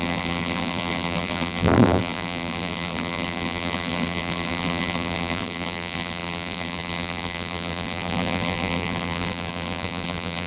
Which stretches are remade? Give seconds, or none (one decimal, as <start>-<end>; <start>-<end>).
0.0-10.5

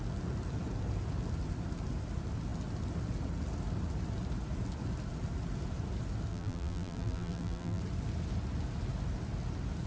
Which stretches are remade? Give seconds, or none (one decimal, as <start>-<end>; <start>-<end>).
6.3-7.8

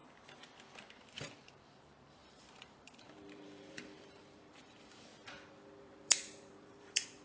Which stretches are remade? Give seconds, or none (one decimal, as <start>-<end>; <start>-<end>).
1.0-5.1; 5.8-7.2